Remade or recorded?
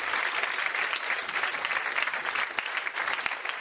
recorded